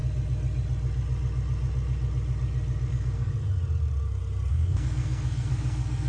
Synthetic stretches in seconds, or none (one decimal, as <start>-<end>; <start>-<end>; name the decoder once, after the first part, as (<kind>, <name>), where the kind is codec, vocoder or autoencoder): 2.9-3.3 (codec, SNAC); 4.5-6.1